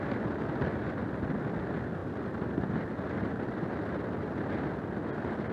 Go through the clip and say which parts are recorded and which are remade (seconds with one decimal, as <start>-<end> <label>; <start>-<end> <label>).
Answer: 0.0-5.5 recorded